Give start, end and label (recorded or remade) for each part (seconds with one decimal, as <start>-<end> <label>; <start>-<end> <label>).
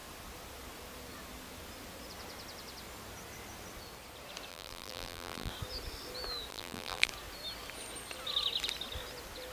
0.0-4.5 recorded; 4.5-5.5 remade; 5.5-6.5 recorded; 6.5-7.1 remade; 7.1-9.5 recorded